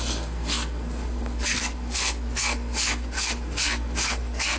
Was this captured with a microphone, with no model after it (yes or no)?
no